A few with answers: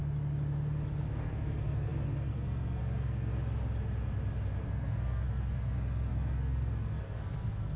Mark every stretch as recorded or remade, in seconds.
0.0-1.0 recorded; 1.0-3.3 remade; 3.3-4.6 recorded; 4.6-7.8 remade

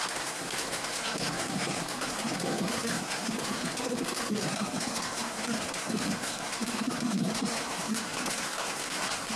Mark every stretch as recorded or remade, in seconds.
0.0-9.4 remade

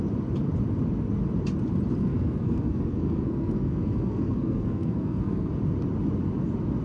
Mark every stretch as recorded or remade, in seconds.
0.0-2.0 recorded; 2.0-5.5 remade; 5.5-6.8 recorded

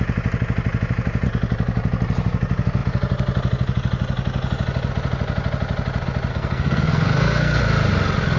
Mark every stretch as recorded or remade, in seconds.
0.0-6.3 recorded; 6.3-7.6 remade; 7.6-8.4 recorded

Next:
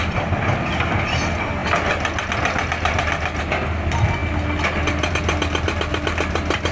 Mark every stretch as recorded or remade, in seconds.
0.0-6.7 recorded